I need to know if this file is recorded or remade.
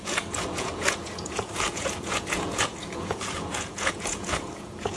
remade